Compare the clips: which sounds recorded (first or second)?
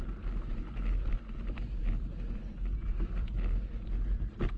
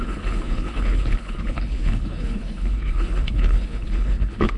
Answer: first